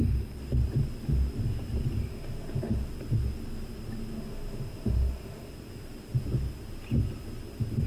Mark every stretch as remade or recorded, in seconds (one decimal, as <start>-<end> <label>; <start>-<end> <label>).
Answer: 0.0-2.1 recorded; 2.1-2.9 remade; 2.9-4.1 recorded; 4.1-5.5 remade; 5.5-7.9 recorded